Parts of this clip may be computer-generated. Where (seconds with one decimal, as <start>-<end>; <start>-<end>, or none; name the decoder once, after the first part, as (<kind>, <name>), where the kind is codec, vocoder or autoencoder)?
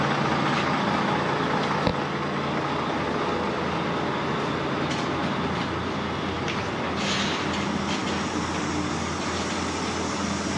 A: none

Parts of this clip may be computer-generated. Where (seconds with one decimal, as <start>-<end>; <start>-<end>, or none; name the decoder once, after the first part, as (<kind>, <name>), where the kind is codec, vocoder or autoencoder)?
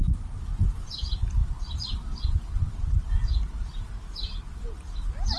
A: 1.4-4.6 (vocoder, BigVGAN v2)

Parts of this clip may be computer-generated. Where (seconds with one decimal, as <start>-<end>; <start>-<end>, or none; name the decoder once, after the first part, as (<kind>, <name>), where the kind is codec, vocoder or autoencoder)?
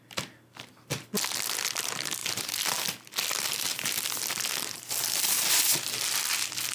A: none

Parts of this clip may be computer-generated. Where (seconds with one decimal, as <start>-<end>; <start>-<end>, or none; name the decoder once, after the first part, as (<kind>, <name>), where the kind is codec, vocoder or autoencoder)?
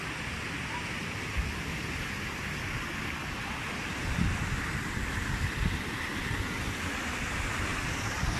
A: none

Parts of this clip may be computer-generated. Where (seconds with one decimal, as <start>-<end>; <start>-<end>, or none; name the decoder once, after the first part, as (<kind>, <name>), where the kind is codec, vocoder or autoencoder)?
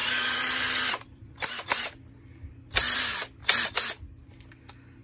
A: 0.0-3.0 (vocoder, BigVGAN v2)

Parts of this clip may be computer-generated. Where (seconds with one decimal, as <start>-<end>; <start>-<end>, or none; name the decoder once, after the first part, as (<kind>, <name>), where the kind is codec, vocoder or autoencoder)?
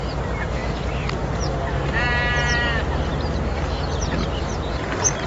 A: none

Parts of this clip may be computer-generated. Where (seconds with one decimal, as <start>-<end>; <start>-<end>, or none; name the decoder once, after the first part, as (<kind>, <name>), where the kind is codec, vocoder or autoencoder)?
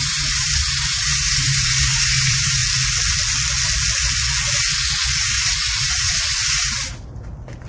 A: 0.0-2.6 (vocoder, BigVGAN v2); 5.2-7.7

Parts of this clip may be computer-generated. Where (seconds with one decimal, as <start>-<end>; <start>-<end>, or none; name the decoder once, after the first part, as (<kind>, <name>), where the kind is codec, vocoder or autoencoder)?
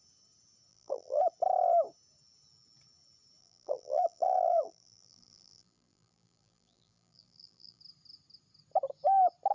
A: 0.7-1.3 (vocoder, BigVGAN v2); 3.4-7.8